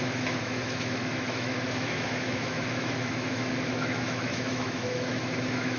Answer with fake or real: fake